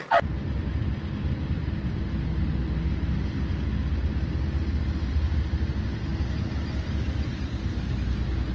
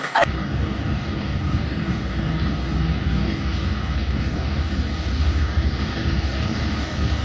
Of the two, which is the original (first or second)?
first